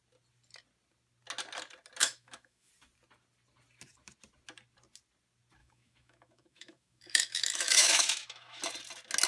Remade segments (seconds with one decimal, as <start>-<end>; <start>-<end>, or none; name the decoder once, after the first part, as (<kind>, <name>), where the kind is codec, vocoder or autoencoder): 2.0-2.7 (autoencoder, DAC-VAE); 5.6-8.6